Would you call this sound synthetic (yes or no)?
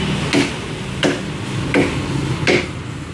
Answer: no